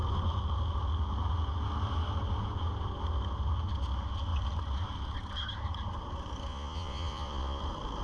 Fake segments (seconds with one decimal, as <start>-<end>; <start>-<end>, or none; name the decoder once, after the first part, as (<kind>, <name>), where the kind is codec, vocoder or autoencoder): 6.5-7.6 (vocoder, Vocos)